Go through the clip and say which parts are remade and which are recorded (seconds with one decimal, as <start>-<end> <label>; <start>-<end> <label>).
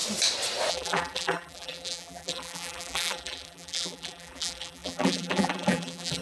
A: 0.0-0.7 recorded; 0.7-6.2 remade